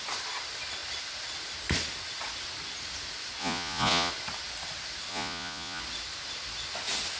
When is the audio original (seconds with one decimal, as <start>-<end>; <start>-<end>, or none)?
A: 0.0-3.4; 4.1-5.1; 5.8-7.2